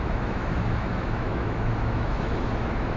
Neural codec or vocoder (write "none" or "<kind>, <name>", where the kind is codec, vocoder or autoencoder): autoencoder, DAC-VAE